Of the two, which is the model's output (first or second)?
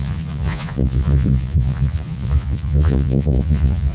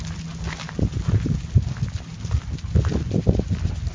first